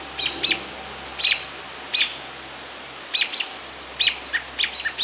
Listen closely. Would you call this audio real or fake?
real